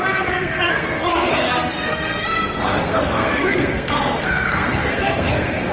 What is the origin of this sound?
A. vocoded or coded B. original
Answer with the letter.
A